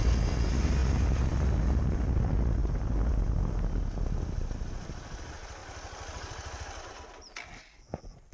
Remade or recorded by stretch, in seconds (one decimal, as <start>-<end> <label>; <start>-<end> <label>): 0.0-0.8 recorded; 0.8-1.3 remade; 1.3-5.6 recorded; 5.6-7.5 remade; 7.5-8.3 recorded